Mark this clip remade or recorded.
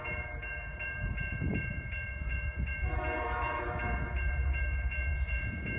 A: remade